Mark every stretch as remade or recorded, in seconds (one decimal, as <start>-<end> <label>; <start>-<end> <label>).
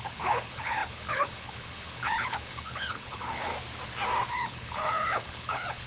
0.0-3.5 remade; 3.5-4.3 recorded; 4.3-5.9 remade